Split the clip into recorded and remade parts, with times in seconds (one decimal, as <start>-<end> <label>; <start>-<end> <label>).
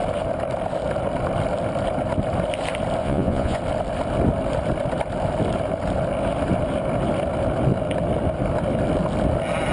0.0-3.0 recorded; 3.0-3.6 remade; 3.6-9.7 recorded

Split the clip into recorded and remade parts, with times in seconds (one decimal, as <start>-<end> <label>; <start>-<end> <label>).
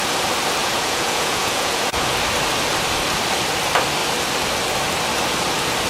0.0-0.6 recorded; 0.6-2.1 remade; 2.1-5.9 recorded